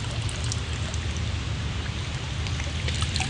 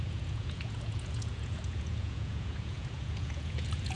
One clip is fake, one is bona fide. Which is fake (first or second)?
second